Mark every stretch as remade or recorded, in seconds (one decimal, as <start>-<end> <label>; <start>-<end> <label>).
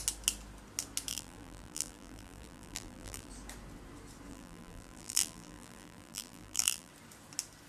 0.0-1.1 recorded; 1.1-3.3 remade; 3.3-4.3 recorded; 4.3-6.9 remade; 6.9-7.7 recorded